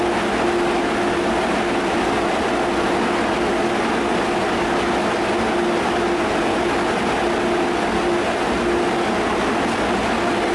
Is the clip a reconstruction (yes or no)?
no